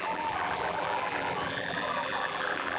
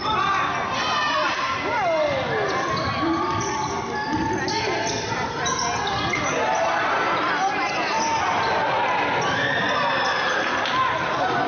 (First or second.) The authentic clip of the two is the second